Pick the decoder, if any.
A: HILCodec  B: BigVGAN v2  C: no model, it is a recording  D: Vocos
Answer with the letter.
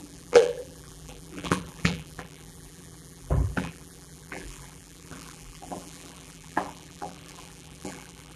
B